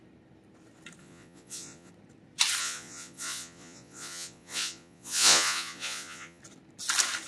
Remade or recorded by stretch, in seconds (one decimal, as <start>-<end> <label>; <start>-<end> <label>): 0.0-1.0 recorded; 1.0-1.9 remade; 1.9-2.6 recorded; 2.6-6.4 remade; 6.4-7.3 recorded